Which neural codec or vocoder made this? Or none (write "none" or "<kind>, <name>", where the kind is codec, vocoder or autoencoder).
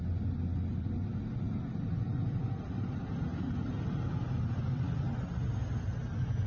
none